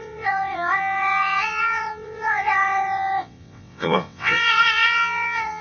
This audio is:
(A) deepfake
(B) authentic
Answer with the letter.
A